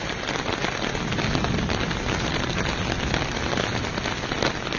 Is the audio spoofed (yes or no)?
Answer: no